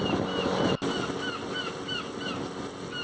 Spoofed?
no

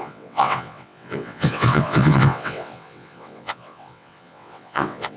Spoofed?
yes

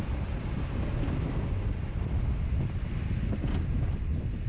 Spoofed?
no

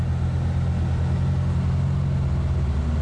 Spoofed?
no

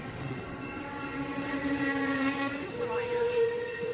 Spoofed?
yes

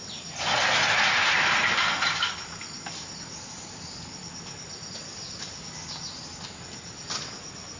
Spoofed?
no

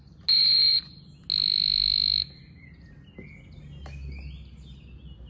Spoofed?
no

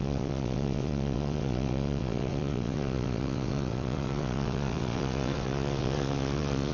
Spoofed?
yes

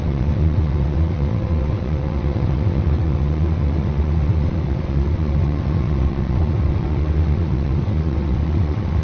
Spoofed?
yes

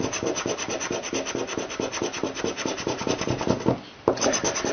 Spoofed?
no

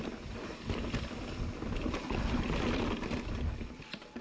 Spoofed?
no